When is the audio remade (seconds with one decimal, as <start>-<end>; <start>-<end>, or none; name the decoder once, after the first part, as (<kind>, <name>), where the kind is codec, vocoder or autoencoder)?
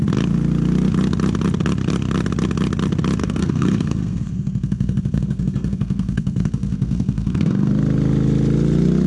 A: 3.2-7.7 (codec, SNAC)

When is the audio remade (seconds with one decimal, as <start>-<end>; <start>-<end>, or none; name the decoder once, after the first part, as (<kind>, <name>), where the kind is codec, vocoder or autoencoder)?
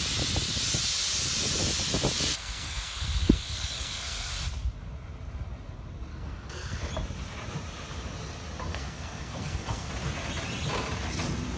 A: 2.3-4.3 (codec, SNAC); 6.1-6.9; 8.7-9.9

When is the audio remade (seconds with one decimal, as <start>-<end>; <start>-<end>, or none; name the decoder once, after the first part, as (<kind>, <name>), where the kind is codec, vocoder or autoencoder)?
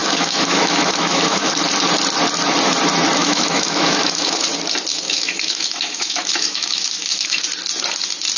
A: 0.0-1.5 (autoencoder, DAC-VAE); 3.2-4.5; 4.9-7.4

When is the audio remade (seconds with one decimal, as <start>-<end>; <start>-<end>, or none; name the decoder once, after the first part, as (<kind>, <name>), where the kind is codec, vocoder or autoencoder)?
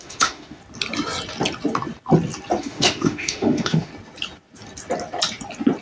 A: 0.0-0.6 (autoencoder, DAC-VAE); 2.6-3.9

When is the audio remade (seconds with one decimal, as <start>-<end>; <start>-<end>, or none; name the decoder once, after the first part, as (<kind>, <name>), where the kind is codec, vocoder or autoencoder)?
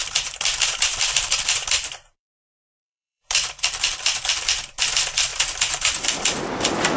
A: 0.0-4.2 (vocoder, BigVGAN v2); 5.3-6.1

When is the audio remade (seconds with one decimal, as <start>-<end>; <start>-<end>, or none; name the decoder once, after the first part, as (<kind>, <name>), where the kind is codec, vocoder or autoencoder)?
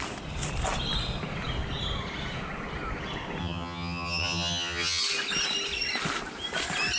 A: 3.4-5.0 (vocoder, HiFi-GAN)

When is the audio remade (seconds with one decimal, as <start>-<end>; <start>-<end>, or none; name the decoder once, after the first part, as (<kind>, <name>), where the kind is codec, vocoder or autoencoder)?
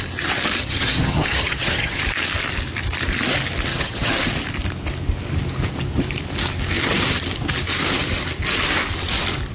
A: 0.6-2.0 (vocoder, HiFi-GAN); 3.7-4.3